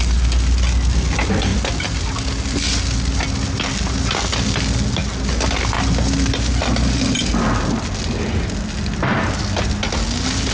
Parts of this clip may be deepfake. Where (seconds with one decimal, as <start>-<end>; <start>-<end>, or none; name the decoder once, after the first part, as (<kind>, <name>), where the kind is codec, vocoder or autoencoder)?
none

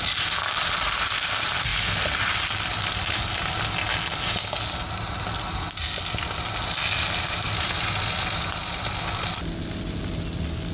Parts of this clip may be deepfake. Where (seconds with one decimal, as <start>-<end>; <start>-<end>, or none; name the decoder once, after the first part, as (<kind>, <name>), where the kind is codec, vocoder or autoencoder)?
none

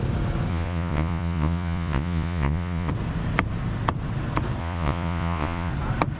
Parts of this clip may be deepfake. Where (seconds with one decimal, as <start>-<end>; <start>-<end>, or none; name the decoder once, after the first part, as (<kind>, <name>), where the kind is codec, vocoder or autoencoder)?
0.5-2.9 (vocoder, Vocos); 4.6-5.7

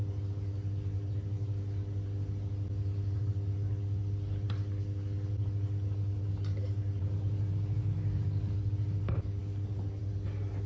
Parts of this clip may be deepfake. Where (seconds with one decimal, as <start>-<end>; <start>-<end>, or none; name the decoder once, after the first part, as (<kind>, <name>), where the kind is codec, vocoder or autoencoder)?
none